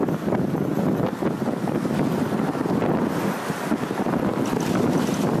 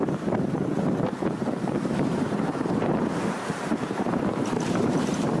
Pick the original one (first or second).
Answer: first